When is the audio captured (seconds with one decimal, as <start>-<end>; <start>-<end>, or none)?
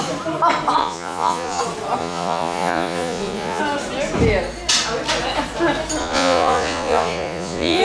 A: 0.0-0.8; 1.6-2.0; 3.6-6.0